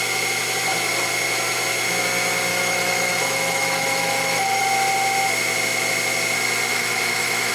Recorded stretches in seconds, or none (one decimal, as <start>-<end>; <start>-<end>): 0.0-2.5; 4.6-6.7